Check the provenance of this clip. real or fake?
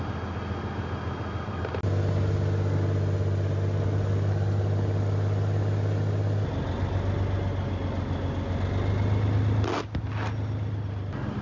real